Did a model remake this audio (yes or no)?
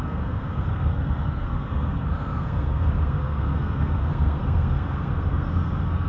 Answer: yes